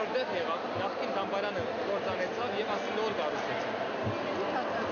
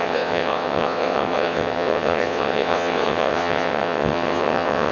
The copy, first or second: second